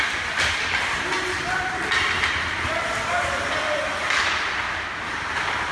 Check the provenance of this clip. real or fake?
real